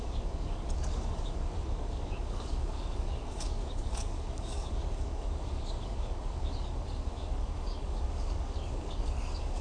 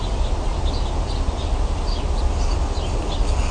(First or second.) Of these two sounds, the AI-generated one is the first